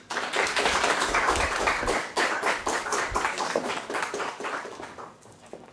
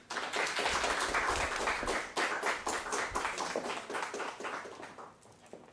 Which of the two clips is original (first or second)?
second